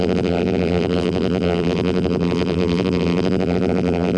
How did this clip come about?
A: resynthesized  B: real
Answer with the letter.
A